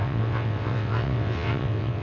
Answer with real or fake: fake